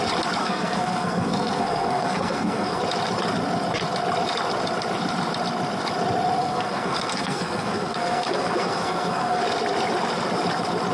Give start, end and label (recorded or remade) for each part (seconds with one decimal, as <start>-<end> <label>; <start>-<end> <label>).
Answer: 0.0-0.4 recorded; 0.4-2.8 remade; 2.8-6.4 recorded; 6.4-9.4 remade; 9.4-10.9 recorded